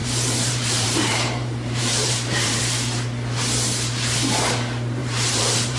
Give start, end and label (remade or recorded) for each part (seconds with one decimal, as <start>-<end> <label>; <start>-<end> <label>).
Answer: 0.0-2.6 remade; 2.6-5.0 recorded; 5.0-5.8 remade